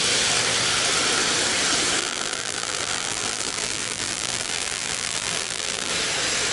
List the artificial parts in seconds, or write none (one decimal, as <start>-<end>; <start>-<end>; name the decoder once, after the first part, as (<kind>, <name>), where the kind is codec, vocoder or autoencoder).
2.0-5.9 (vocoder, BigVGAN v2)